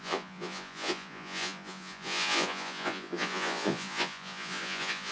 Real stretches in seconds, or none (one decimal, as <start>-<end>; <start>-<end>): none